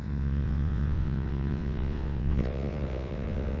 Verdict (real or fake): fake